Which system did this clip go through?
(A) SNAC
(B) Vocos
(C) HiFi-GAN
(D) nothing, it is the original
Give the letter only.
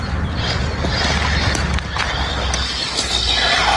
D